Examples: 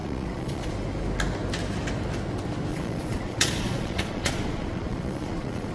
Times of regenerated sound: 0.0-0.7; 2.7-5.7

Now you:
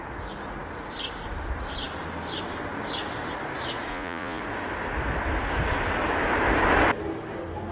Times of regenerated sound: 3.9-4.4

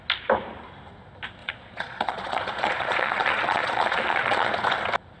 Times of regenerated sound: 1.4-4.5